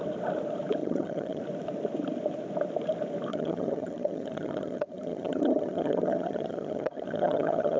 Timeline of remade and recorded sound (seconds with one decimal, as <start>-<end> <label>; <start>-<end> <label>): 0.0-0.8 recorded; 0.8-1.4 remade; 1.4-3.3 recorded; 3.3-7.8 remade